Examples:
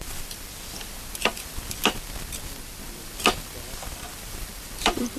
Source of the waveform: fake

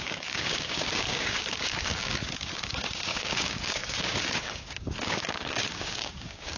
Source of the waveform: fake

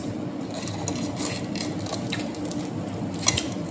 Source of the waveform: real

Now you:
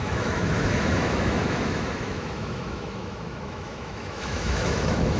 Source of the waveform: fake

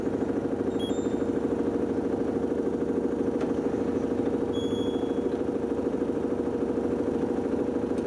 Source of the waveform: fake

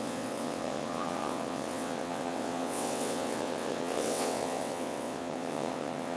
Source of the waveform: fake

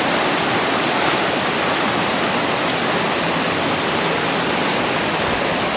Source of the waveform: real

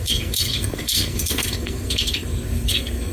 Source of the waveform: fake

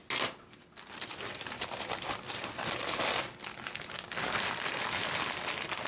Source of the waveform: real